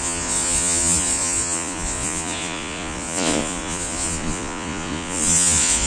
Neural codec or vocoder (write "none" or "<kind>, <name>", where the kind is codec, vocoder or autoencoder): vocoder, Vocos